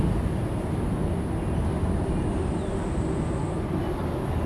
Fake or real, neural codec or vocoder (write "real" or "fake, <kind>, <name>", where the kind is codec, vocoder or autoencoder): real